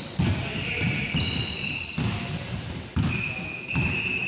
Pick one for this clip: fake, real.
real